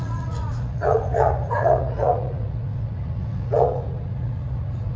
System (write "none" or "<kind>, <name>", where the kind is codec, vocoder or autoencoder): vocoder, Vocos